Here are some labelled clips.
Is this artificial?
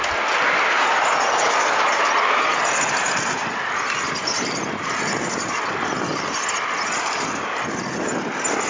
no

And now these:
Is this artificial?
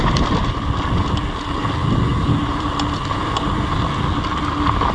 no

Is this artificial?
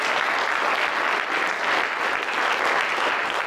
no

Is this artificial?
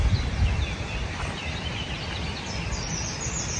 no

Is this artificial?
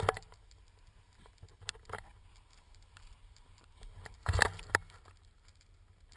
no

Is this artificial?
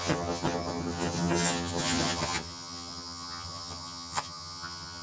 yes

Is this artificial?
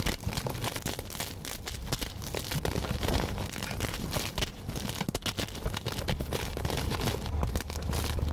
no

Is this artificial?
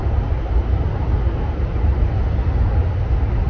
no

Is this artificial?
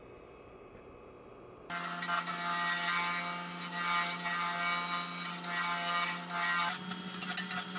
no